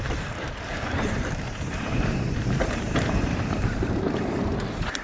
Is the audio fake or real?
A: fake